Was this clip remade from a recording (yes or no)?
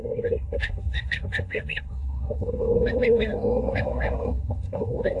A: yes